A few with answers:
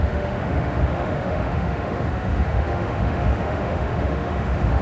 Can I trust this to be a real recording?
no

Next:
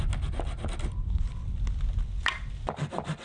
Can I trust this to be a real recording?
yes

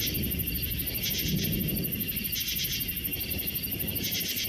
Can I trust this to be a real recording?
yes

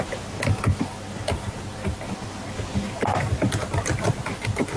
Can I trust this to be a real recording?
yes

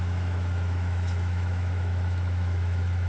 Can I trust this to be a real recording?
no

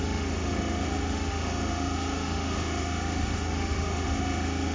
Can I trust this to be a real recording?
no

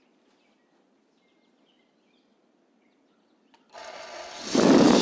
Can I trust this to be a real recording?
yes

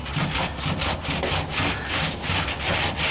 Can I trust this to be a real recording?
yes